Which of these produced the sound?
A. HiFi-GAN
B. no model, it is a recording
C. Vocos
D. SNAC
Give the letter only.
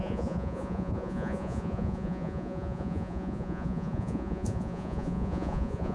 C